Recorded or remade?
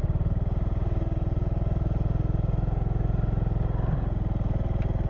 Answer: recorded